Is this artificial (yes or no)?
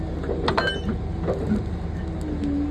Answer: no